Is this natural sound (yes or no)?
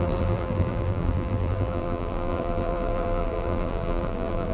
no